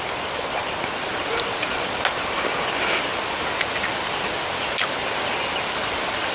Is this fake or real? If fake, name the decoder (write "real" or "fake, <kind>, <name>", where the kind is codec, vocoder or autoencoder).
real